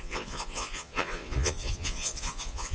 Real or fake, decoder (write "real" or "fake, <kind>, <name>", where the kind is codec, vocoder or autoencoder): fake, vocoder, Vocos